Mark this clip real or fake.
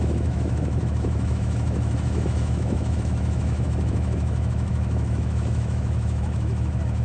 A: fake